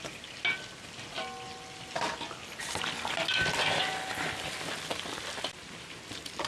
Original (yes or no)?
yes